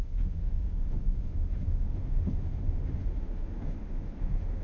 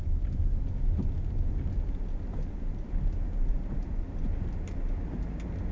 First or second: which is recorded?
second